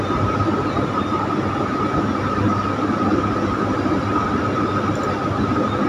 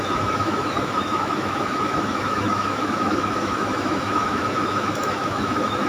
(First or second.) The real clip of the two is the first